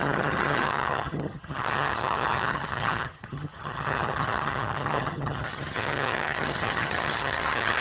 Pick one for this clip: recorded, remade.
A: remade